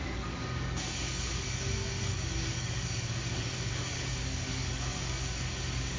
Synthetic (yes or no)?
yes